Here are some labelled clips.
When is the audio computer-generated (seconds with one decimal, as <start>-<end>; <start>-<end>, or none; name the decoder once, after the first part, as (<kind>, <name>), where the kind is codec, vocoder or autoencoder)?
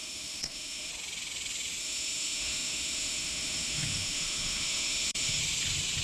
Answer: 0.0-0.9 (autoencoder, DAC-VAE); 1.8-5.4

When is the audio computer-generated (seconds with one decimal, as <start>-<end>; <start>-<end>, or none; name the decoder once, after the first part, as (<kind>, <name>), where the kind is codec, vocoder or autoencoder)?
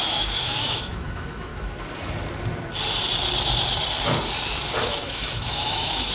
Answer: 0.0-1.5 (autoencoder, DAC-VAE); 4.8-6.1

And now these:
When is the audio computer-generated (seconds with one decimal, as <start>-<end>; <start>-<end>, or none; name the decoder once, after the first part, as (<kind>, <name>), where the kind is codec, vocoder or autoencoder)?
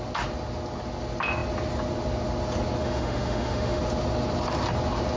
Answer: 2.8-3.8 (autoencoder, DAC-VAE)